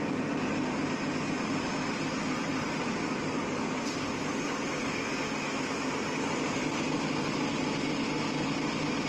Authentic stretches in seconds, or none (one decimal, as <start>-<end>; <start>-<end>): 0.0-2.5; 3.2-9.1